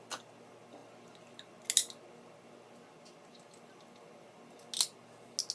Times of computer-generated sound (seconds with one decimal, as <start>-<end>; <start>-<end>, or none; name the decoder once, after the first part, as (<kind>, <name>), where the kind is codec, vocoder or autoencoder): none